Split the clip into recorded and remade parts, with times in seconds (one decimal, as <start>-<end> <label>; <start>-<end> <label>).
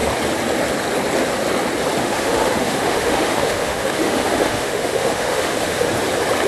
0.0-2.0 recorded; 2.0-5.9 remade; 5.9-6.5 recorded